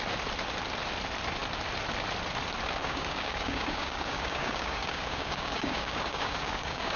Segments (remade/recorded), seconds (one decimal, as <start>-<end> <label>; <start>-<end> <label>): 0.0-2.8 recorded; 2.8-7.0 remade